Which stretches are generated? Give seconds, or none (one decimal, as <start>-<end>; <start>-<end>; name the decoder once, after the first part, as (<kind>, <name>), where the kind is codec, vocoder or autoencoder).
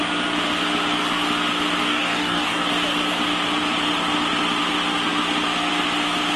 1.8-2.7 (codec, DAC)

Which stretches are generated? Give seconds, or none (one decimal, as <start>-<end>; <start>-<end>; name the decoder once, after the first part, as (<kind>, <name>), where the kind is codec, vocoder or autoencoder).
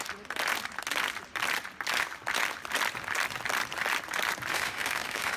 4.5-5.4 (autoencoder, DAC-VAE)